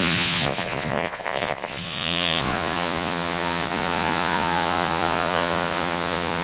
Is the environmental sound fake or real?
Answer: fake